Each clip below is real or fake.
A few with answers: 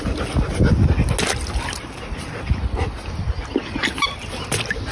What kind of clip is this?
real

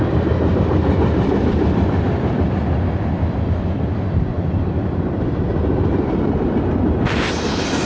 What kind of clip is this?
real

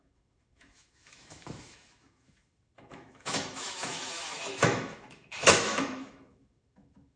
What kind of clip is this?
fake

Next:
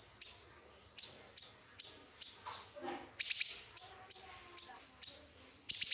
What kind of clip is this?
real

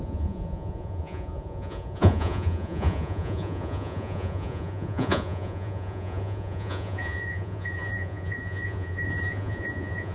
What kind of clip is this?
fake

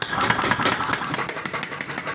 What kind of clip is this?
real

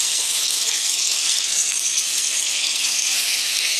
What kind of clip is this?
fake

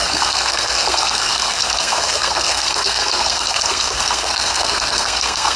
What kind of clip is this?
fake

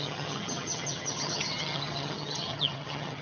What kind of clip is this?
fake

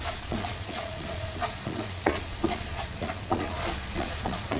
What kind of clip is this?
fake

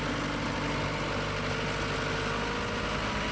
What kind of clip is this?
real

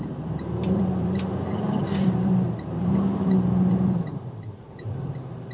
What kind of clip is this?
fake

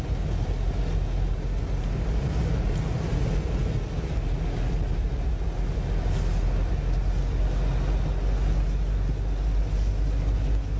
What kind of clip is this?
real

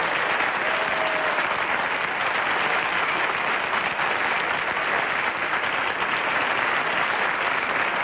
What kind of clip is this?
real